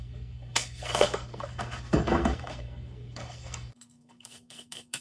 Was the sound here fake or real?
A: fake